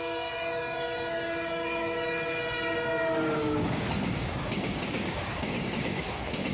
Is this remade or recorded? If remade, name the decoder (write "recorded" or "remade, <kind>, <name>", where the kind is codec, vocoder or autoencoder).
remade, codec, DAC